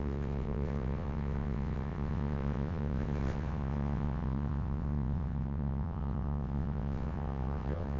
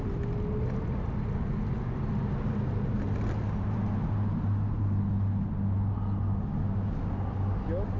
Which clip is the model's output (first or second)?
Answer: first